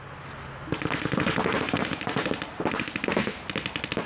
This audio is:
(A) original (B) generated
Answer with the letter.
A